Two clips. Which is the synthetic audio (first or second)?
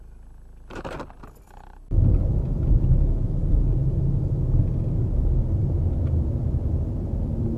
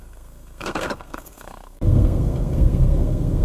second